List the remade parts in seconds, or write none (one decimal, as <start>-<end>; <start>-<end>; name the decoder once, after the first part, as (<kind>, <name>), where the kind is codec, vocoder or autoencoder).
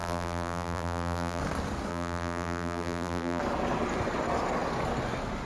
0.0-1.4 (vocoder, BigVGAN v2); 1.9-3.4